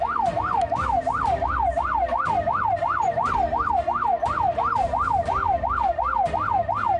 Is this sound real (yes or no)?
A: yes